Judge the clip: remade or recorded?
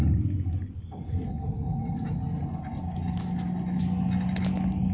recorded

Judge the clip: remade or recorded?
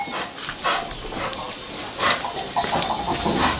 recorded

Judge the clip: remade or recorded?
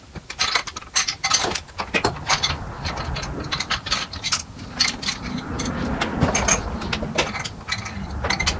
recorded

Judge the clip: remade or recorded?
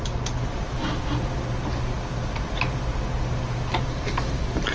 recorded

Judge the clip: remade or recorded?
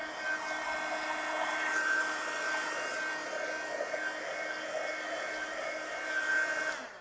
recorded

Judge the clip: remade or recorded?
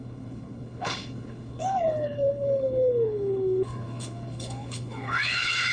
remade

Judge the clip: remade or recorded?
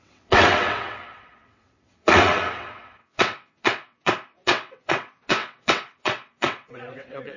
remade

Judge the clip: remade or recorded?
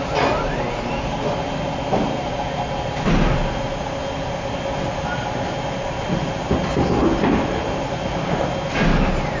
recorded